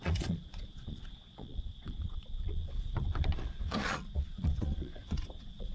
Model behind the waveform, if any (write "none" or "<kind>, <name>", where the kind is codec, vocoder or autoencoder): vocoder, Vocos